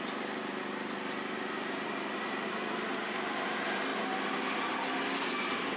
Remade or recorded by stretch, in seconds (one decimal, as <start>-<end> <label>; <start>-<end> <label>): 0.0-5.8 recorded